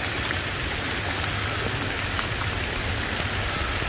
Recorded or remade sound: recorded